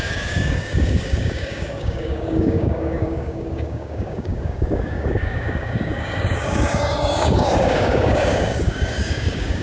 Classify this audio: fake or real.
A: fake